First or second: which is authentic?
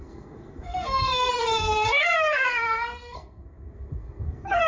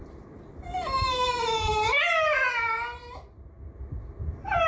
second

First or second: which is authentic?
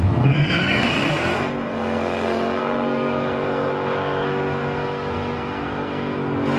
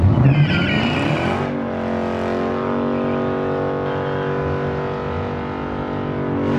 second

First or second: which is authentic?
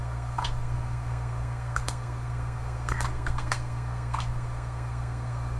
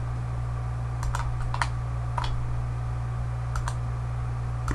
second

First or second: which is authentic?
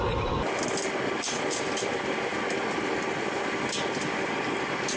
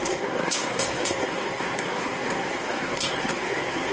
first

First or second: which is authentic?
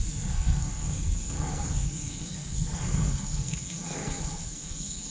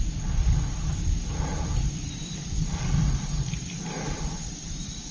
second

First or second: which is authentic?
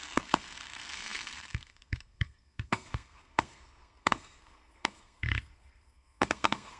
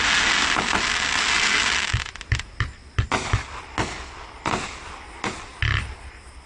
second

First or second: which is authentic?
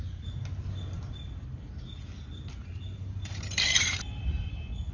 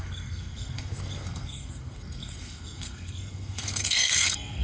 first